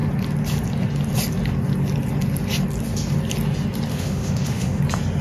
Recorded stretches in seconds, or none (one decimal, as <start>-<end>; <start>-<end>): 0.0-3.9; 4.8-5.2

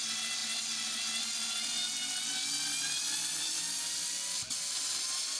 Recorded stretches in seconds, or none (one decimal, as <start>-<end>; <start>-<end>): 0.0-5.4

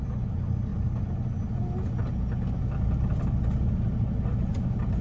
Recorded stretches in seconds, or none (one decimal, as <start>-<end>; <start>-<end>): 0.0-5.0

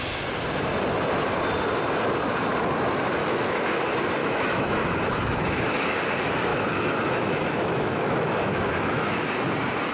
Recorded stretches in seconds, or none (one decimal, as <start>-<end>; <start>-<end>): 0.0-3.2; 3.8-4.2; 5.6-6.5; 9.3-9.9

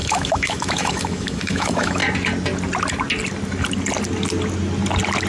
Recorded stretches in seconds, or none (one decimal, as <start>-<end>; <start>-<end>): 2.0-5.3

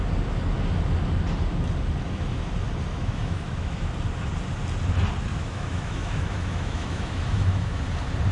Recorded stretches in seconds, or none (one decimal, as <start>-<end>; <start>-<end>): 0.0-2.9; 3.9-5.3; 7.8-8.3

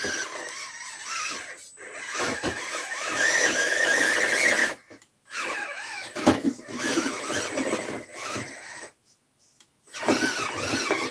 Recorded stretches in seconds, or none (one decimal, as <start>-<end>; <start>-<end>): 0.0-2.1; 4.1-4.6; 7.4-8.1; 10.0-11.1

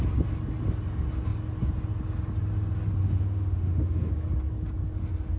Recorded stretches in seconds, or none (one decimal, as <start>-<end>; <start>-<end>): 0.0-3.0; 4.1-5.4